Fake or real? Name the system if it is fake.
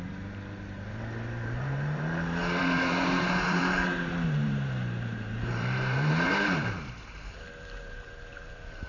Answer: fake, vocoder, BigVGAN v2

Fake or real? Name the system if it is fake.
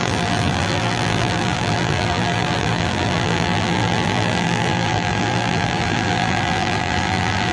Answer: fake, vocoder, BigVGAN v2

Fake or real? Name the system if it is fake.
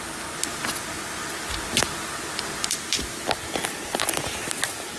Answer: real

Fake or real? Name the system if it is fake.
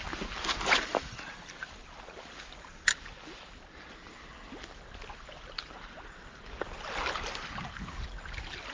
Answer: real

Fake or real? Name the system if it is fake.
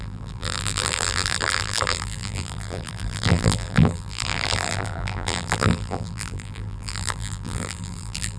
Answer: fake, vocoder, BigVGAN v2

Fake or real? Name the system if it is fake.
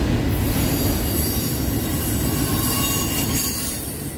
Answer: real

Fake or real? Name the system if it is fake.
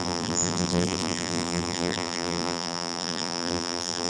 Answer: fake, vocoder, BigVGAN v2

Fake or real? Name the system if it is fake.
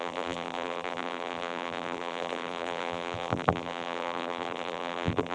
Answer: fake, vocoder, BigVGAN v2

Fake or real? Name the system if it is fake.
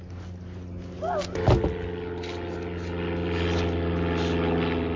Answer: real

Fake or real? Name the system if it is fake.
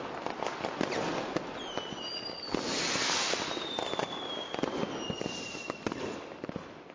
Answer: fake, vocoder, BigVGAN v2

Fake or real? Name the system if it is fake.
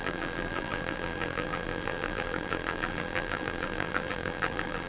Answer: fake, vocoder, BigVGAN v2